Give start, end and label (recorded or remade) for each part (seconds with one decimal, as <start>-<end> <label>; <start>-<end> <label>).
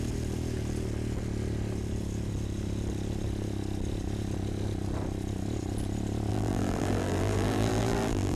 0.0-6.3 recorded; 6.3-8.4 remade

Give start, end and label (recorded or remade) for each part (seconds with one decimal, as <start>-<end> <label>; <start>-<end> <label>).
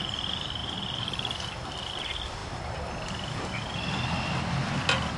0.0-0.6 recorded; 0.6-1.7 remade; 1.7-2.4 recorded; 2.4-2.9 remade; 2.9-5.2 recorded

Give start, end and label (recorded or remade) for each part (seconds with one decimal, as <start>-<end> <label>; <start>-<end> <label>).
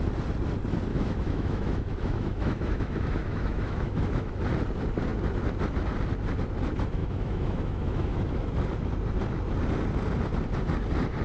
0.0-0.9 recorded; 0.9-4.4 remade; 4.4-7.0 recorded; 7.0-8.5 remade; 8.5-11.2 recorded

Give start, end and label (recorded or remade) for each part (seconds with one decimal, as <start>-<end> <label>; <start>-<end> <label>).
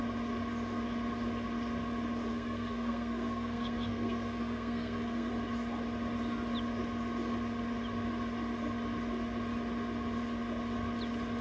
0.0-2.3 recorded; 2.3-5.3 remade; 5.3-11.4 recorded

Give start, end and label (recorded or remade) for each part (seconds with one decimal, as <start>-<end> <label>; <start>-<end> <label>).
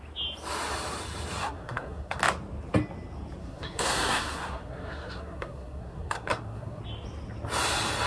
0.0-1.4 recorded; 1.4-2.2 remade; 2.2-3.4 recorded; 3.4-6.8 remade; 6.8-8.1 recorded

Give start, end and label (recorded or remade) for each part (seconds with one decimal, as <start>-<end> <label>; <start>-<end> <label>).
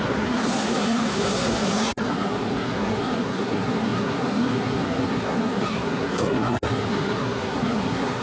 0.0-8.2 remade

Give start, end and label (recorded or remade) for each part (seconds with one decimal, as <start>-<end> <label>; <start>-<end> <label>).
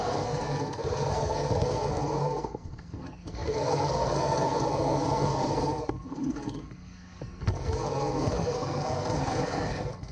0.0-10.1 remade